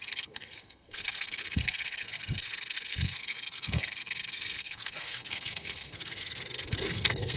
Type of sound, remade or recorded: remade